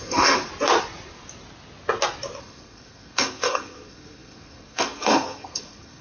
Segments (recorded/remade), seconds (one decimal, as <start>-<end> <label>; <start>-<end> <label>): 0.0-0.5 remade; 0.5-2.4 recorded; 2.4-6.0 remade